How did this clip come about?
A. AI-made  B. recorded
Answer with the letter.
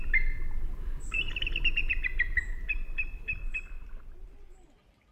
B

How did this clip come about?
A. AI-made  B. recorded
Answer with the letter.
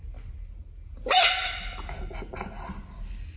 B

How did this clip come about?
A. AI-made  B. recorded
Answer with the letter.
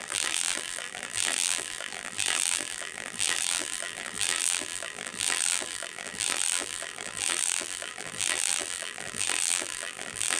A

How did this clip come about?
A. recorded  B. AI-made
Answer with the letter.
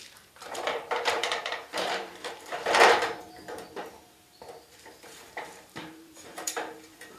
B